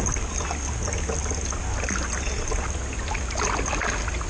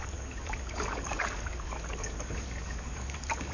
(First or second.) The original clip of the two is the first